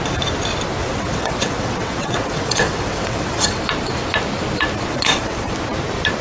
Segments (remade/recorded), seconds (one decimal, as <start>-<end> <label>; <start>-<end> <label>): 0.0-0.8 recorded; 0.8-3.6 remade; 3.6-4.9 recorded; 4.9-5.5 remade; 5.5-6.2 recorded